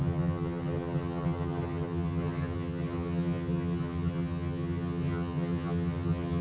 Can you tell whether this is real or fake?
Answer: fake